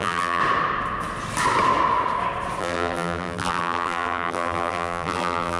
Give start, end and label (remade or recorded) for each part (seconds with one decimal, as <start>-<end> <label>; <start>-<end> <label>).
0.0-0.4 remade; 0.4-2.6 recorded; 2.6-5.6 remade